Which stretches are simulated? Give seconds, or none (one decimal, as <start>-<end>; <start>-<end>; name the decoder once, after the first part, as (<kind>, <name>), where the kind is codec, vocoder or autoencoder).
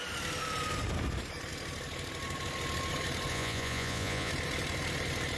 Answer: 3.3-4.3 (vocoder, Vocos)